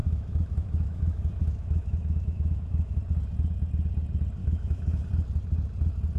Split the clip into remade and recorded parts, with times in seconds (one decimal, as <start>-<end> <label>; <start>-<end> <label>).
0.0-3.0 remade; 3.0-4.4 recorded; 4.4-5.1 remade; 5.1-6.2 recorded